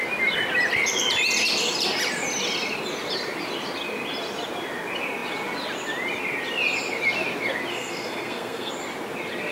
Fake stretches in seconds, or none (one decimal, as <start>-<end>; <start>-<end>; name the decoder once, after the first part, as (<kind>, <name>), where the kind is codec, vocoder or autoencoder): 7.7-8.7 (codec, SNAC)